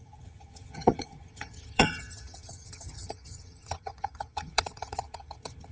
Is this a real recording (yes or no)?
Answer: no